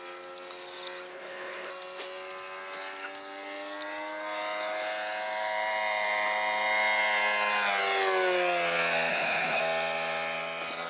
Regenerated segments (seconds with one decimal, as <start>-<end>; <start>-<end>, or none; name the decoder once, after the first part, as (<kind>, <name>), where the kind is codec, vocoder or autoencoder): 1.1-1.7 (codec, HILCodec); 9.1-9.6